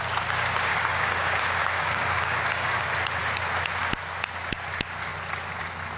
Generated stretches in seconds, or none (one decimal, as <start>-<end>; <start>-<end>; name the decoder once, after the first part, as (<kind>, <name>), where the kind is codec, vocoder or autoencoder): 0.7-2.8 (codec, DAC)